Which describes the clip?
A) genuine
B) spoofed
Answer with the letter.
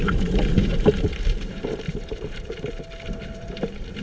B